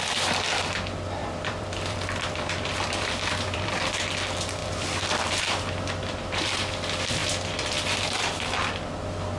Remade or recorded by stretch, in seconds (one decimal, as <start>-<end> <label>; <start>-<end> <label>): 0.0-1.2 recorded; 1.2-3.7 remade; 3.7-4.6 recorded; 4.6-6.5 remade; 6.5-7.2 recorded; 7.2-8.2 remade; 8.2-9.4 recorded